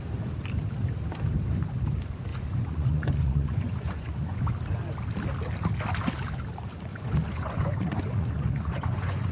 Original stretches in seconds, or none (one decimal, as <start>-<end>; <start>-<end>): 0.0-2.3; 4.4-6.9